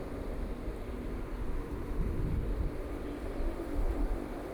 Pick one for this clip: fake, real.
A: real